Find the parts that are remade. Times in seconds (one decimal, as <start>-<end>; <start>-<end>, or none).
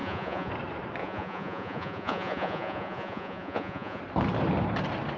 0.0-0.5; 1.0-4.0